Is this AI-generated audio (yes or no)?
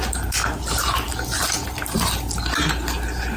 no